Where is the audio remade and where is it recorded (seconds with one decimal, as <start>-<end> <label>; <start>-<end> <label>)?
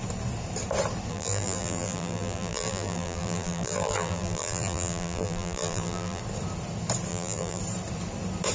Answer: 0.0-1.1 recorded; 1.1-6.2 remade; 6.2-7.1 recorded; 7.1-7.6 remade; 7.6-8.5 recorded